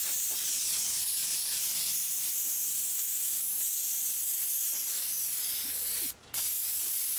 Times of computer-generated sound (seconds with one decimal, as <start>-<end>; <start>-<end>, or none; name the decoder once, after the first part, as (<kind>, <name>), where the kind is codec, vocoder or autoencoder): none